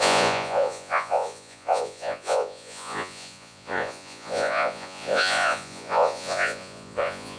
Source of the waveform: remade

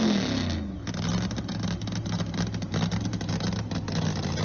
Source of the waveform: recorded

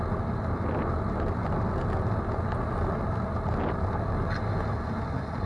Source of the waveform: recorded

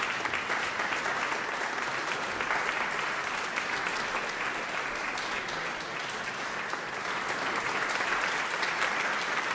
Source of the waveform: recorded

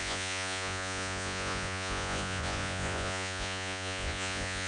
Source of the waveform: remade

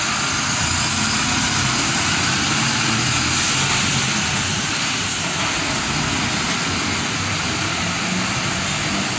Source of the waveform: recorded